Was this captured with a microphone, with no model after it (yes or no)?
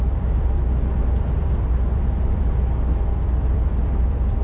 no